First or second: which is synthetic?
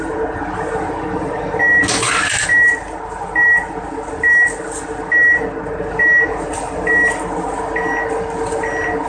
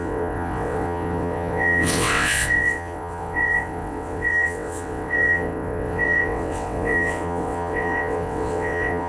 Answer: second